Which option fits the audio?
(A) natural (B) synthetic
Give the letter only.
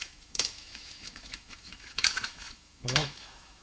B